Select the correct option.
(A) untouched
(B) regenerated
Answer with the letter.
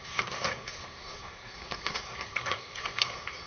B